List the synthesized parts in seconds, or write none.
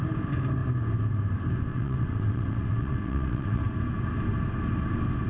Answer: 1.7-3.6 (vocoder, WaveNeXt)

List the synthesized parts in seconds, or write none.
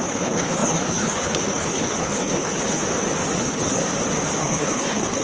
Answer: 0.0-2.8 (codec, HILCodec); 3.4-3.8; 4.4-5.2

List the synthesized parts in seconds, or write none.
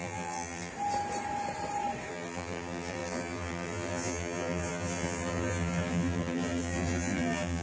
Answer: 0.0-0.7 (vocoder, BigVGAN v2); 2.1-7.6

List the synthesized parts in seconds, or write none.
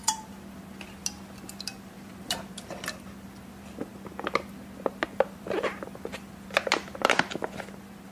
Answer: none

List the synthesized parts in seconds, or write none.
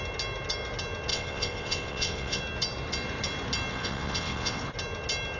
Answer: 1.1-2.4 (vocoder, WaveNeXt); 3.7-4.6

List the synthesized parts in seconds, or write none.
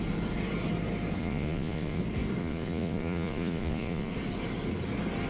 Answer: 1.2-2.0 (vocoder, Vocos); 2.4-4.1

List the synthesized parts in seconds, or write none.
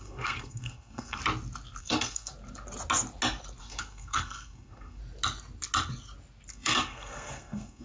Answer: 0.0-1.2 (codec, SNAC); 1.8-2.3; 3.6-5.0; 6.5-7.8